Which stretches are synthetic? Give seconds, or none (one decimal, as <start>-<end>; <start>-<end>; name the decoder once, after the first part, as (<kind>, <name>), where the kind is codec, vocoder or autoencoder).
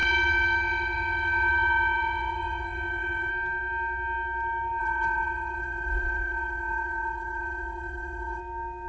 0.0-3.3 (vocoder, WaveNeXt); 4.8-8.4